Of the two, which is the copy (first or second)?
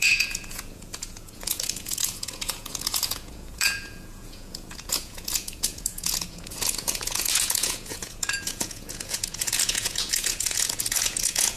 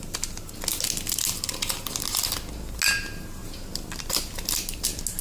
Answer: first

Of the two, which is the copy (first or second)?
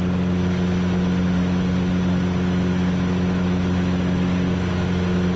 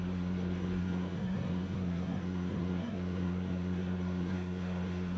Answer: second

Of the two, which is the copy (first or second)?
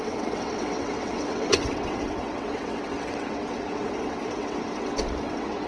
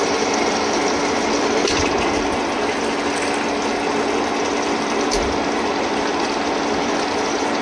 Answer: first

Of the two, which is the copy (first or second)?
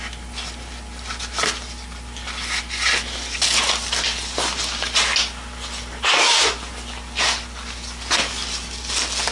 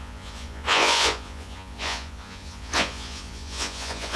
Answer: second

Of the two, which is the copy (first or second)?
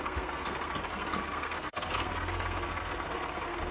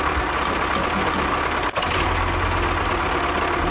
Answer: first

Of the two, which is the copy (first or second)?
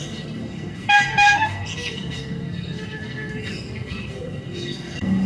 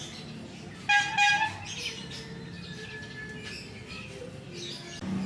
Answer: first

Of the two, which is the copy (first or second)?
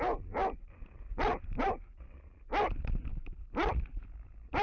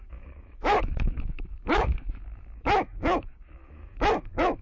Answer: second